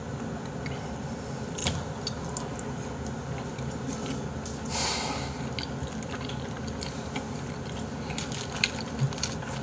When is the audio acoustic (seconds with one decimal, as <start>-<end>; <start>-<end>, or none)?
0.0-9.6